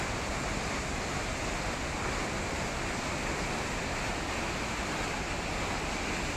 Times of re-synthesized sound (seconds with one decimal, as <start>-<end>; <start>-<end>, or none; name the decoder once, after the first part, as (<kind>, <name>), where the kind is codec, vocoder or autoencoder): none